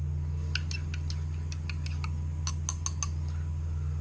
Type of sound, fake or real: real